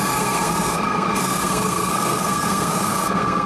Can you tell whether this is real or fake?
fake